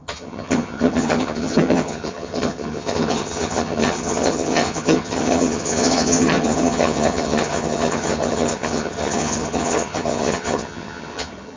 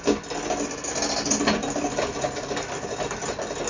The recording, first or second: second